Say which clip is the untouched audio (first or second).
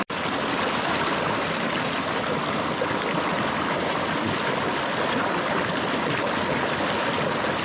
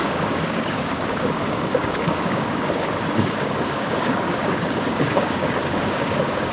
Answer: first